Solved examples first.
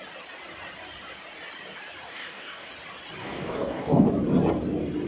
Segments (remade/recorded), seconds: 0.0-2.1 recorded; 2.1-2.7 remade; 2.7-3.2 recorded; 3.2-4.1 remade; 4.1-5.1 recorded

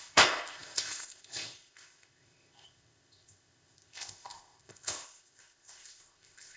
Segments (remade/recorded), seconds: 0.0-6.6 remade

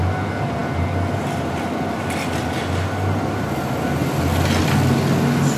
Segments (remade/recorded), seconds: 0.0-5.6 recorded

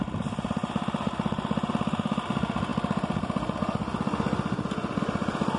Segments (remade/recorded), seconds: 0.0-5.6 recorded

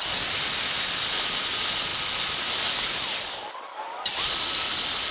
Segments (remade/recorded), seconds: 0.0-5.1 recorded

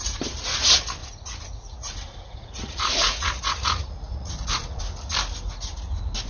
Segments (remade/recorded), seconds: 0.0-1.0 recorded; 1.0-4.8 remade; 4.8-6.3 recorded

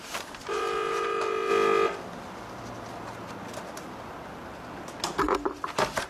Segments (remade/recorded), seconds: 0.0-1.5 remade; 1.5-5.2 recorded; 5.2-6.1 remade